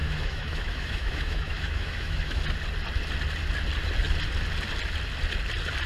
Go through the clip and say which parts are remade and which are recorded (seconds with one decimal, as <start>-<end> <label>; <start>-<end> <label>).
0.0-2.4 remade; 2.4-5.9 recorded